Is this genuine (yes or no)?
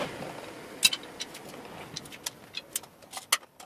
yes